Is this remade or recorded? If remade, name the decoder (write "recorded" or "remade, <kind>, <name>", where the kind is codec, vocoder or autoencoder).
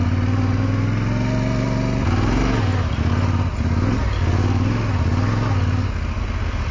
recorded